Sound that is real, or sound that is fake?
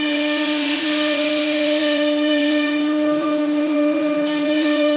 fake